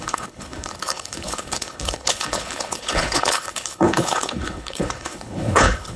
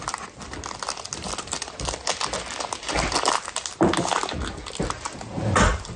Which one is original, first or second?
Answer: second